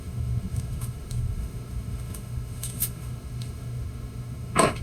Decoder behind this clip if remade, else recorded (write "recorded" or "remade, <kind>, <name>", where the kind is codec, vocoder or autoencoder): remade, autoencoder, DAC-VAE